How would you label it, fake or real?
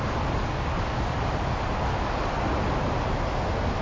real